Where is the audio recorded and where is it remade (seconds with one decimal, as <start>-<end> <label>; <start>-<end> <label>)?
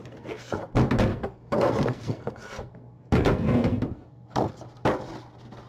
0.0-0.6 remade; 0.6-1.1 recorded; 1.1-4.5 remade; 4.5-5.7 recorded